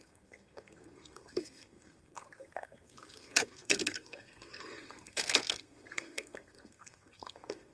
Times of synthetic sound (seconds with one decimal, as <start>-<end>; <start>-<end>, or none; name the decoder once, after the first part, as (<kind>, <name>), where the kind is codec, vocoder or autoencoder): 0.0-7.7 (codec, SNAC)